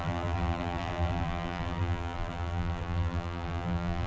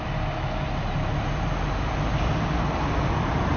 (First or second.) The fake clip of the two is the first